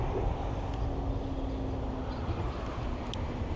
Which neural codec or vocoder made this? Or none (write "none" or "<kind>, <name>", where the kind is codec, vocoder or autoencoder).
none